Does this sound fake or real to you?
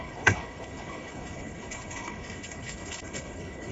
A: fake